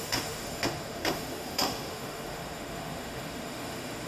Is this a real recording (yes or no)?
no